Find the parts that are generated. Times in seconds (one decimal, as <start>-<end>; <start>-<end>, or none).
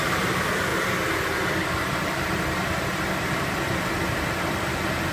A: 0.0-5.1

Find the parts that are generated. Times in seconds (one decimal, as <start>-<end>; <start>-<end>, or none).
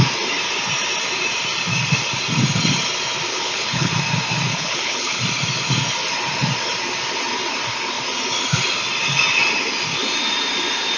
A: 3.3-3.9; 4.5-5.2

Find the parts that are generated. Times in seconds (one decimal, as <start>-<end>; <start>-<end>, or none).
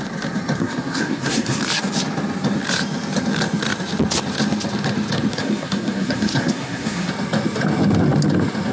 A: 0.6-1.6; 5.3-7.1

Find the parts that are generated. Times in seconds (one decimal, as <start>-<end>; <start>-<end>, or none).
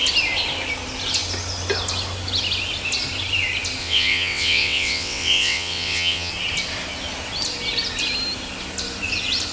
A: 3.8-6.3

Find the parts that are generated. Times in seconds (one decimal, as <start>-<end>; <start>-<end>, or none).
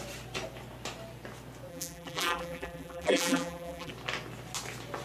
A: 1.7-3.9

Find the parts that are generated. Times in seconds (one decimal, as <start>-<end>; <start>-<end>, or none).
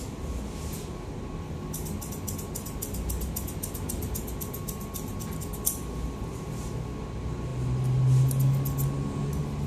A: none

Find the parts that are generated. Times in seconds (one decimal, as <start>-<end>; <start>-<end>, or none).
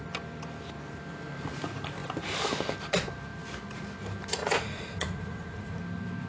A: 4.4-5.8